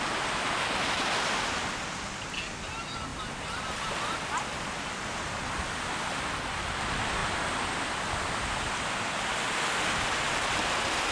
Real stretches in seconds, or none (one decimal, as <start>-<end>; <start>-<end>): 0.0-11.1